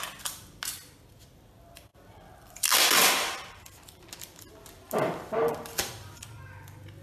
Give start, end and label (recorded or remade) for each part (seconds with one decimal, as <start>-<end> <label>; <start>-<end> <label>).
0.0-1.9 recorded; 1.9-6.1 remade; 6.1-7.0 recorded

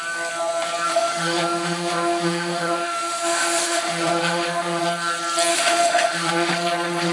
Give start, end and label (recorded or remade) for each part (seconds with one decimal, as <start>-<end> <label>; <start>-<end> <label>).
0.0-0.9 recorded; 0.9-4.8 remade; 4.8-5.5 recorded; 5.5-6.5 remade; 6.5-7.1 recorded